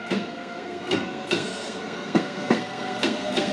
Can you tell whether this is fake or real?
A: fake